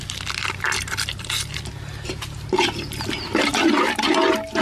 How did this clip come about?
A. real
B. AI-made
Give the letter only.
A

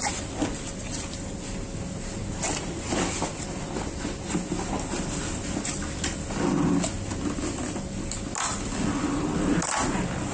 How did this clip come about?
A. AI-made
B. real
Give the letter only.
B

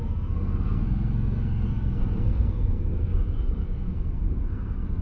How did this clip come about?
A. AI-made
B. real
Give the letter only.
A